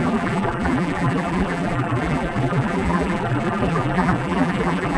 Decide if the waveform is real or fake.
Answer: fake